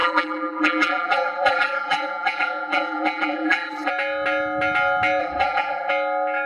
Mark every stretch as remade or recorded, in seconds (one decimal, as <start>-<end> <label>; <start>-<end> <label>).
0.0-3.9 remade; 3.9-5.2 recorded; 5.2-5.9 remade; 5.9-6.5 recorded